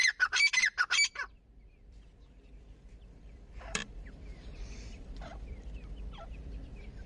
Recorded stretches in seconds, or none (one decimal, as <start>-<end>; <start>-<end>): none